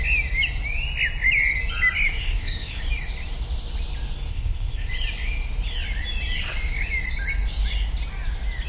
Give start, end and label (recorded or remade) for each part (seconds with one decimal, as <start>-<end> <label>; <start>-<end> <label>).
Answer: 0.0-2.2 recorded; 2.2-2.8 remade; 2.8-4.3 recorded; 4.3-4.9 remade; 4.9-8.7 recorded